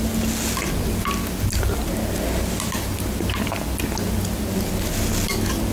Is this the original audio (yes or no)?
yes